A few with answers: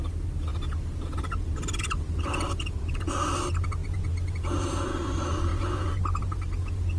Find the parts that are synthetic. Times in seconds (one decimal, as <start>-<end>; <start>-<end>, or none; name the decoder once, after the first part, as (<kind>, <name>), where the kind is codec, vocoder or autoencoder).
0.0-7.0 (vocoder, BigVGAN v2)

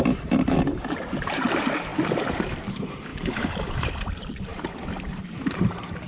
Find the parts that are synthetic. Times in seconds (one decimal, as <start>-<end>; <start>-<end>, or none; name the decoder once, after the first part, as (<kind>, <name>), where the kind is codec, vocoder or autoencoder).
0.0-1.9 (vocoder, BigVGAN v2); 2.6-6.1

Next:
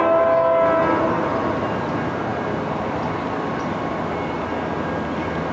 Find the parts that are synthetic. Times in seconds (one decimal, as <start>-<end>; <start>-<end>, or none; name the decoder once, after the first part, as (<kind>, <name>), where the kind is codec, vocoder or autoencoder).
none